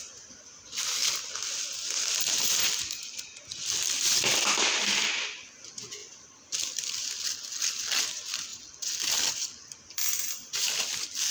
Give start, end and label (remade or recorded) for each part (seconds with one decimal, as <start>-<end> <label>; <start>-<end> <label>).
0.0-2.6 recorded; 2.6-5.2 remade; 5.2-6.0 recorded; 6.0-7.0 remade; 7.0-8.5 recorded; 8.5-10.7 remade; 10.7-11.3 recorded